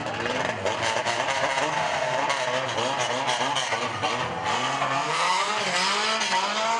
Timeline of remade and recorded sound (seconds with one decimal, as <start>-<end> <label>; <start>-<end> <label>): 0.0-4.5 recorded; 4.5-5.6 remade; 5.6-6.8 recorded